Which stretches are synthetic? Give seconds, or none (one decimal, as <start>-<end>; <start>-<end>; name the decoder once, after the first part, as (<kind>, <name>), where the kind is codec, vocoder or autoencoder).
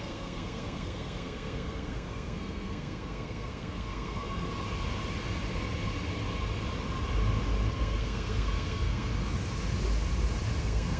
0.0-4.5 (codec, SNAC); 7.7-9.1; 10.6-11.0